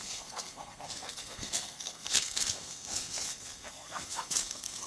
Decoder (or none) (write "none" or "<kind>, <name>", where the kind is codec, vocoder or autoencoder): codec, SNAC